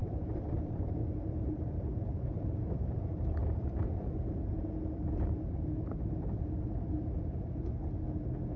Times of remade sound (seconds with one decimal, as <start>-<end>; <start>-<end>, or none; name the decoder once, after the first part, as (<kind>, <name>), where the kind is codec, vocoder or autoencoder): 0.0-3.4 (vocoder, BigVGAN v2); 4.9-8.6